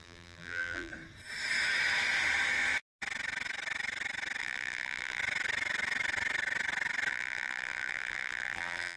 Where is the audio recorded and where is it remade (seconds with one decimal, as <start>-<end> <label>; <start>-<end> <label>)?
0.0-0.9 remade; 0.9-4.4 recorded; 4.4-5.2 remade; 5.2-7.1 recorded; 7.1-9.0 remade